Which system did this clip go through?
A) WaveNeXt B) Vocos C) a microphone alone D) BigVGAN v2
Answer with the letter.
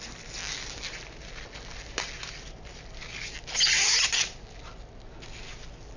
C